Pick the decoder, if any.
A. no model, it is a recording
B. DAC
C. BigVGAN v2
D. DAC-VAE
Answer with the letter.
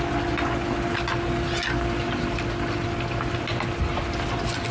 A